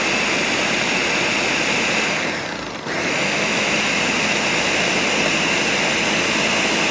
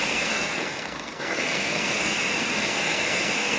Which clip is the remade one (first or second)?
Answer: second